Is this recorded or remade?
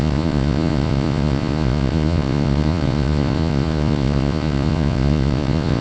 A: remade